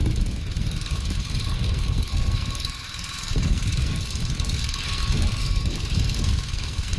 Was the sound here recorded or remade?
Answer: remade